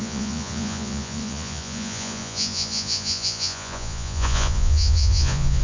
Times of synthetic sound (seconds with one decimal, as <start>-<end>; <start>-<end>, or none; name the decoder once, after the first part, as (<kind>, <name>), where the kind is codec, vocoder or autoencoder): 0.0-5.6 (vocoder, Vocos)